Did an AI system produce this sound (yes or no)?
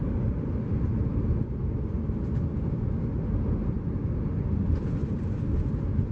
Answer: no